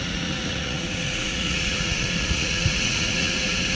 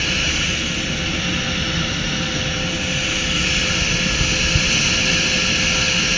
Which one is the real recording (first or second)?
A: second